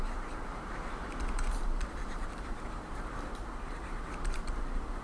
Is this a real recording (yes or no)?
no